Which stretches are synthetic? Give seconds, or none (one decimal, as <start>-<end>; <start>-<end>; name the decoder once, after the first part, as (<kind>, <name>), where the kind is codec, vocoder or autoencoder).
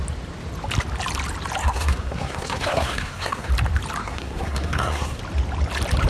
1.6-3.5 (codec, SNAC); 4.0-5.2